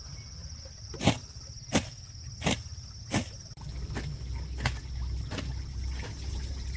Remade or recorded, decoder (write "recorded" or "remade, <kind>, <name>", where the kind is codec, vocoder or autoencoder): recorded